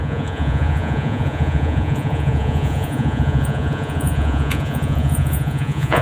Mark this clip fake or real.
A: fake